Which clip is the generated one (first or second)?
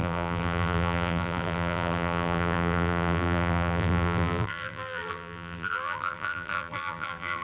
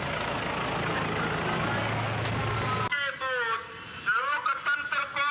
first